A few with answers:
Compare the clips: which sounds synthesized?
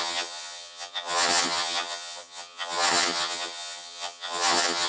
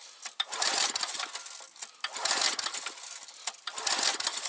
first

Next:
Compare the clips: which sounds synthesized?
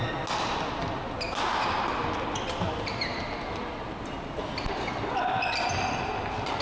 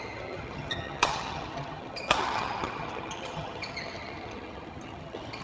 second